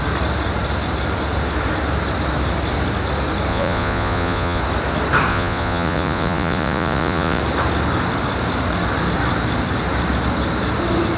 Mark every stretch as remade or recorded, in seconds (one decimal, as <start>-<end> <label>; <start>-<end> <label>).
0.0-3.5 recorded; 3.5-4.6 remade; 4.6-5.3 recorded; 5.3-7.4 remade; 7.4-11.2 recorded